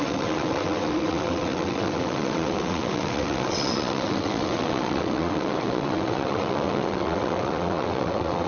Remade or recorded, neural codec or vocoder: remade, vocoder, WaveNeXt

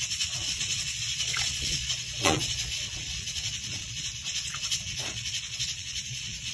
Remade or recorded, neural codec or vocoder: remade, vocoder, Vocos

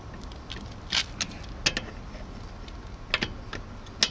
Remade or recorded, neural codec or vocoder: recorded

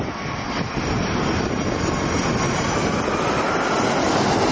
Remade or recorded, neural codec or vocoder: recorded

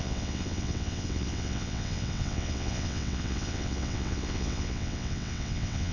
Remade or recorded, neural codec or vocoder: remade, vocoder, WaveNeXt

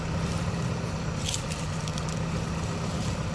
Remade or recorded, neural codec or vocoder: recorded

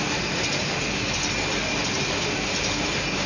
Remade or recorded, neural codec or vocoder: recorded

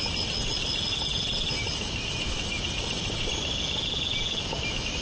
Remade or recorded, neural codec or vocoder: recorded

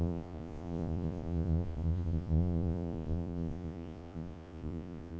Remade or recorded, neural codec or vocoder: remade, vocoder, Vocos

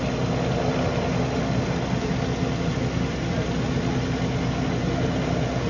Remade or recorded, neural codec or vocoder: recorded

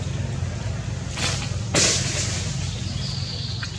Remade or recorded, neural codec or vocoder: recorded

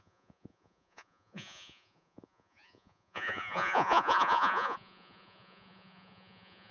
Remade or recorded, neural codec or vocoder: remade, vocoder, Vocos